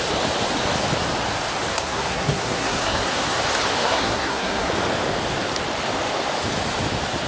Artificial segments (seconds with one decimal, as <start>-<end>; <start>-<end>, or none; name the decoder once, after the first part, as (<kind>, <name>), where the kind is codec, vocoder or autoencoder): 1.7-3.4 (codec, SNAC); 3.8-4.7